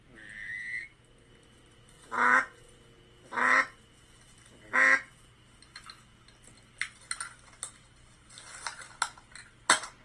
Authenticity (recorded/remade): recorded